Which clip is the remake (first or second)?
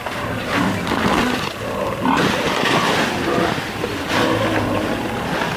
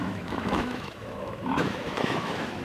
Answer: second